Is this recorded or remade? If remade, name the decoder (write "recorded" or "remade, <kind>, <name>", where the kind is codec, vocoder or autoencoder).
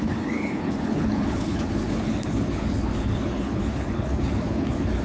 remade, codec, HILCodec